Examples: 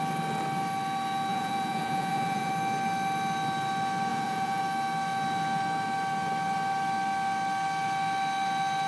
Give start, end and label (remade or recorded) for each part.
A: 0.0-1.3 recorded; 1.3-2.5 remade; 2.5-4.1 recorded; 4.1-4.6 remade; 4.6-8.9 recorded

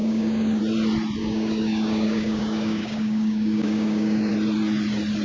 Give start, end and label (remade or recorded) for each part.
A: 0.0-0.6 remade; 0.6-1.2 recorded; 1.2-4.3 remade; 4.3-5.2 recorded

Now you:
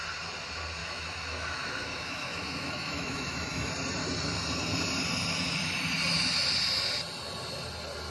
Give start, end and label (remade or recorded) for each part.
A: 0.0-0.8 recorded; 0.8-3.7 remade; 3.7-8.1 recorded